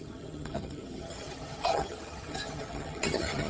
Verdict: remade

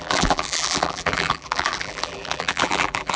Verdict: remade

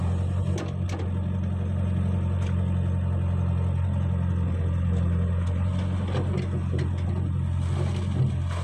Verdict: recorded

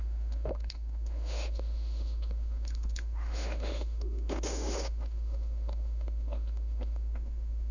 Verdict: remade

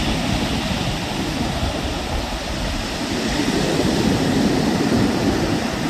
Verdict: remade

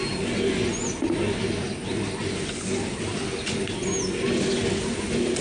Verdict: recorded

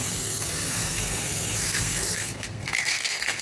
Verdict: remade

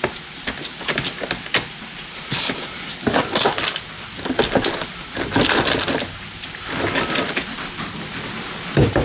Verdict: recorded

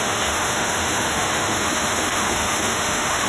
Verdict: remade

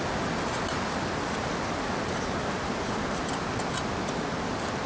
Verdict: recorded